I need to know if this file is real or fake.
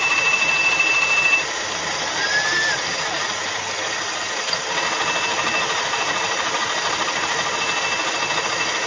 real